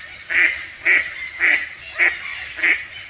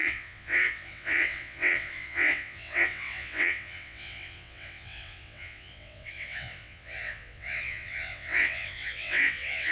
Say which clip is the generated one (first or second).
second